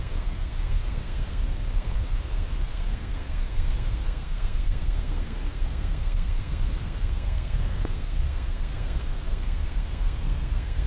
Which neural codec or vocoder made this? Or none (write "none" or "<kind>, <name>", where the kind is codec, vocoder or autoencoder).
codec, SNAC